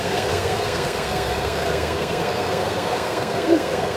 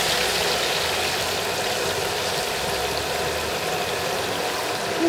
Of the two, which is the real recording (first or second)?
second